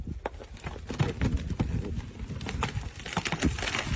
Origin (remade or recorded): recorded